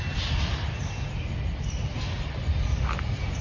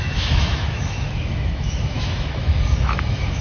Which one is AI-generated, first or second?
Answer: second